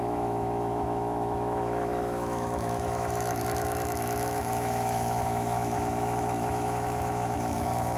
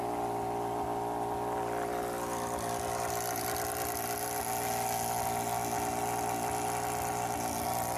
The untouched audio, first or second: second